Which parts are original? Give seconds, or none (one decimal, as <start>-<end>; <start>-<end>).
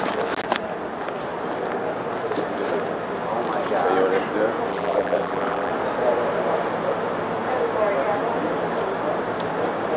0.0-4.7; 5.7-10.0